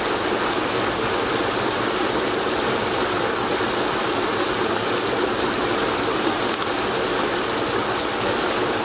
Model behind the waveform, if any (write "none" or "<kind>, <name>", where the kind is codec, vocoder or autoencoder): none